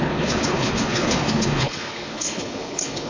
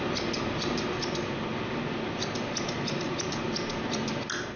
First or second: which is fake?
first